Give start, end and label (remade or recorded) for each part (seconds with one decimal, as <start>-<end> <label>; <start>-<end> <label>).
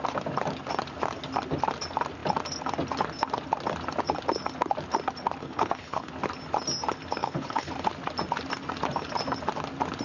0.0-5.4 recorded; 5.4-6.1 remade; 6.1-7.2 recorded; 7.2-7.7 remade; 7.7-10.0 recorded